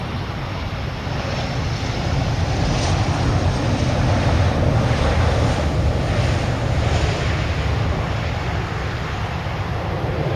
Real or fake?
real